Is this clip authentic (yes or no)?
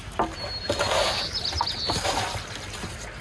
yes